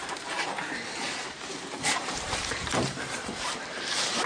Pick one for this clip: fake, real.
fake